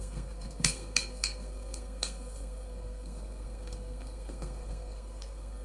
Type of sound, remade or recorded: remade